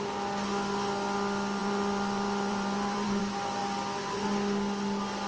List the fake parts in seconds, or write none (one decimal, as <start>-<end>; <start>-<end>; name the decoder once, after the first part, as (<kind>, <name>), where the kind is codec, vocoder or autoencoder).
1.6-3.2 (vocoder, BigVGAN v2)